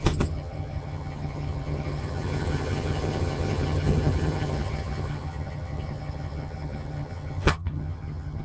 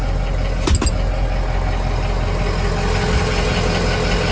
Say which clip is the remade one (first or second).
first